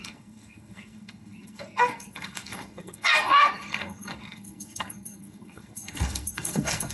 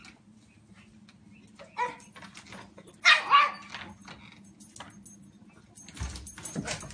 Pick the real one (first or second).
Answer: second